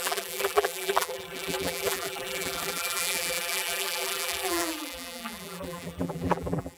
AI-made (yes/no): yes